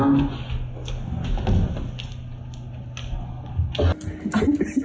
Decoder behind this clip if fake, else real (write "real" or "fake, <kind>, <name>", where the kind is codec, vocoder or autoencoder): real